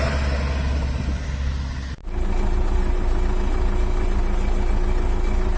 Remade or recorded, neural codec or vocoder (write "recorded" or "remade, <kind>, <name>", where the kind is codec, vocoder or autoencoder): recorded